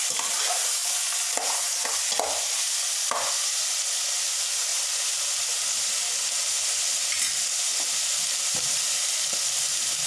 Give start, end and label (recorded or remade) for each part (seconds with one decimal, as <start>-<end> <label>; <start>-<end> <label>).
0.0-10.1 recorded